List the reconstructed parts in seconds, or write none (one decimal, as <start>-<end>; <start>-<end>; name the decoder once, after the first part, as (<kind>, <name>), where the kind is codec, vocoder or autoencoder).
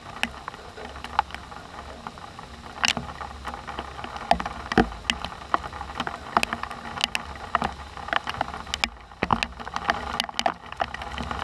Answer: none